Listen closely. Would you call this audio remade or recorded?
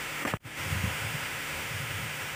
remade